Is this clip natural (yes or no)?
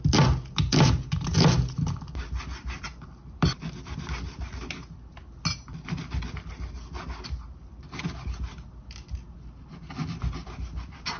yes